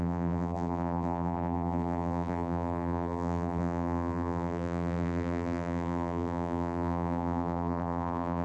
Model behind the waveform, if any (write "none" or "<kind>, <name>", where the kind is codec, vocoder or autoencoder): vocoder, BigVGAN v2